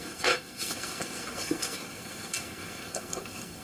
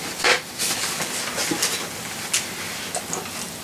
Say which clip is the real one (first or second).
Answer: second